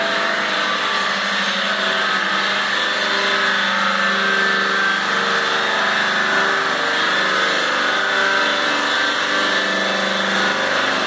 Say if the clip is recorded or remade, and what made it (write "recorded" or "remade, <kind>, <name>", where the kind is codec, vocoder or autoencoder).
recorded